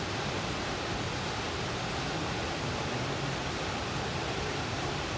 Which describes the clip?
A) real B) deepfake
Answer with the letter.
B